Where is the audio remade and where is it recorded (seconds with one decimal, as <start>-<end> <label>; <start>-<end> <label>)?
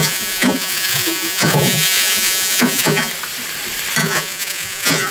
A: 0.0-3.1 remade; 3.1-4.0 recorded; 4.0-5.1 remade